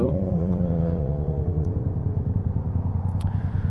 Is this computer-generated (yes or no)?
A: yes